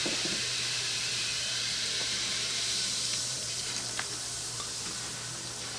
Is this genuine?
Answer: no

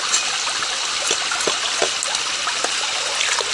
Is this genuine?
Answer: yes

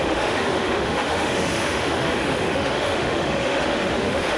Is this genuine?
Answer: no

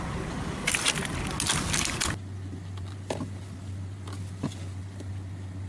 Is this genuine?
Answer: yes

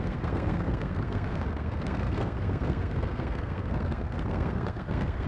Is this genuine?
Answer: no